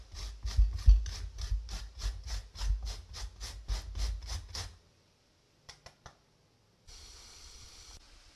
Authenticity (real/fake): real